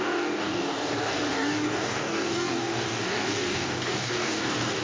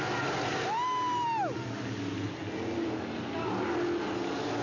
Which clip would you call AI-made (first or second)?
first